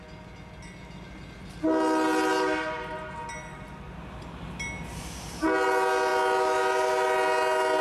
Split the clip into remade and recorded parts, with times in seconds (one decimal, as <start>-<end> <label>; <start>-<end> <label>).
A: 0.0-7.8 recorded